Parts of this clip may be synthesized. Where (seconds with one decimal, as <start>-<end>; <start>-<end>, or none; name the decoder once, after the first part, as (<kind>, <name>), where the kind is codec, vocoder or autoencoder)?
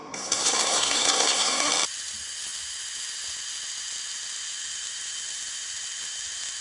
0.0-1.7 (codec, SNAC)